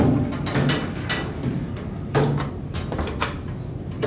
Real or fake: real